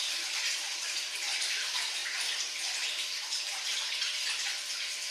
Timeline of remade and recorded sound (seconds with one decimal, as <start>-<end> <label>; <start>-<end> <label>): 0.0-5.1 recorded